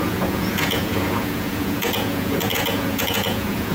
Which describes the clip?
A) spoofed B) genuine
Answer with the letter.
A